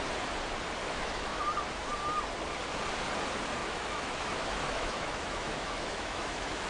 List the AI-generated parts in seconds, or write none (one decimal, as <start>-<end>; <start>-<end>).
0.8-1.4; 3.6-6.7